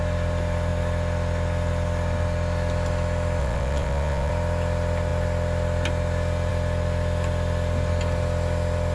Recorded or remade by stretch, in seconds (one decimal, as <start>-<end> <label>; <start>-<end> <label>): 0.0-3.4 recorded; 3.4-4.3 remade; 4.3-8.9 recorded